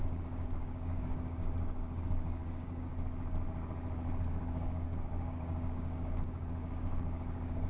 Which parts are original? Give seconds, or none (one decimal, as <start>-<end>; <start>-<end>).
2.9-4.4